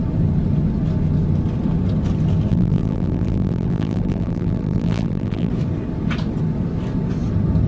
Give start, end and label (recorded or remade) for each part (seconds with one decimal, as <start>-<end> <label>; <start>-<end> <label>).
0.0-2.5 recorded; 2.5-5.5 remade; 5.5-7.7 recorded